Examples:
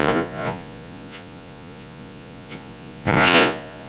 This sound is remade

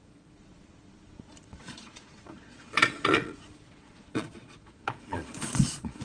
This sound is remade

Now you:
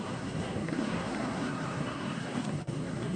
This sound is remade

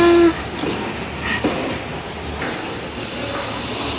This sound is recorded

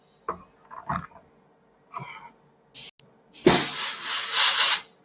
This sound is recorded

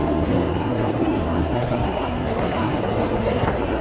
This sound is remade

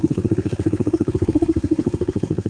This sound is remade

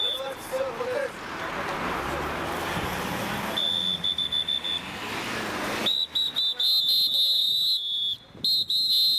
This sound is recorded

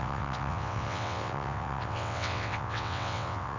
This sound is remade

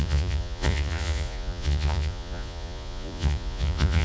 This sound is remade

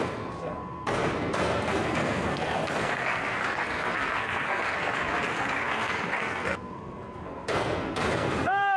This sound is remade